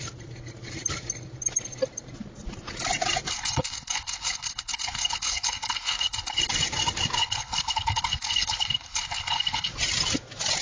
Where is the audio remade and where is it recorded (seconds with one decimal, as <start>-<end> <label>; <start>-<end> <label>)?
0.0-3.3 recorded; 3.3-6.4 remade; 6.4-7.2 recorded; 7.2-9.7 remade; 9.7-10.6 recorded